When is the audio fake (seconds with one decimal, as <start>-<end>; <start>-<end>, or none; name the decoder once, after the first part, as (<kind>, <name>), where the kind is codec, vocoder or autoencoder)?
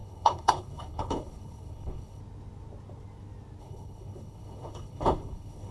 0.0-2.2 (codec, HILCodec); 3.6-5.7